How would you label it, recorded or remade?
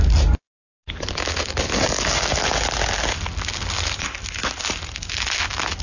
recorded